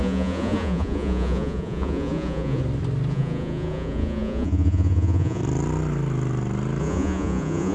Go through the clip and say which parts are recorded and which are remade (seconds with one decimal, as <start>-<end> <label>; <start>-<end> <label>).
0.0-2.6 remade; 2.6-3.1 recorded; 3.1-5.4 remade; 5.4-6.8 recorded; 6.8-7.7 remade